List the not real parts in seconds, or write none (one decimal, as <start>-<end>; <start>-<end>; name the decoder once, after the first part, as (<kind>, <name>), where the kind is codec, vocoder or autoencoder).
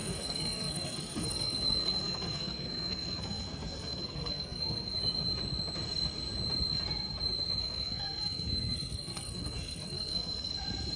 0.0-5.0 (codec, SNAC); 7.6-10.5